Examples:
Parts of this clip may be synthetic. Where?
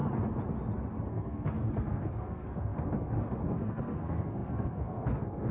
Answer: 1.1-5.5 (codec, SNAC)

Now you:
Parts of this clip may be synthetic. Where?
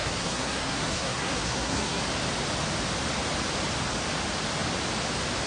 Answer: 0.0-2.0 (codec, SNAC)